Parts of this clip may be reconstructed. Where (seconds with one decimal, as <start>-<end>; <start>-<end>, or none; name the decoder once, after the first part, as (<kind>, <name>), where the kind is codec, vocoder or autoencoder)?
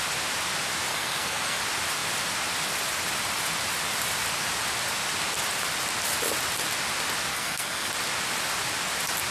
0.9-1.6 (codec, SNAC); 7.3-7.9